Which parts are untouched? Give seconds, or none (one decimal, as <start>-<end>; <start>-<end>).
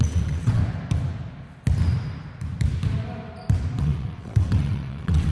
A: 0.6-3.8